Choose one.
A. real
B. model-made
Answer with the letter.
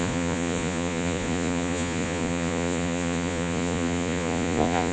B